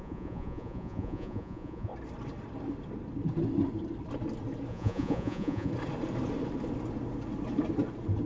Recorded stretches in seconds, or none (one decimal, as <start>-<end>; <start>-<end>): 1.9-4.7; 5.7-8.3